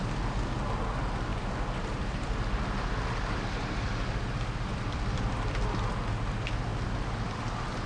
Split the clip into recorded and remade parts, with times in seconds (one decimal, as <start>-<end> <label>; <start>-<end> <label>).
0.0-1.3 recorded; 1.3-5.9 remade; 5.9-7.9 recorded